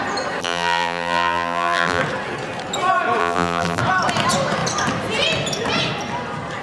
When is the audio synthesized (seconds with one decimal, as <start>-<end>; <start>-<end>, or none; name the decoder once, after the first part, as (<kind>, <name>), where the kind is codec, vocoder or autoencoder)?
0.4-2.0 (vocoder, BigVGAN v2); 3.2-3.8